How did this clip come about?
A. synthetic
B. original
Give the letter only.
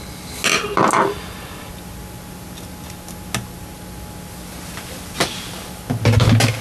B